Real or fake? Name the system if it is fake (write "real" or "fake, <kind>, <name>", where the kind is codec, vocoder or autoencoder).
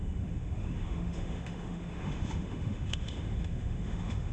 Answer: fake, autoencoder, DAC-VAE